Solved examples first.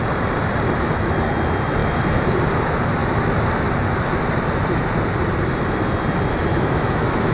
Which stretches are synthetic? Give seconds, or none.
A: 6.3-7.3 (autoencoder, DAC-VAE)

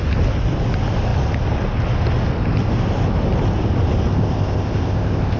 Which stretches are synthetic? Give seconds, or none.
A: 4.1-5.4 (codec, ZipCodec)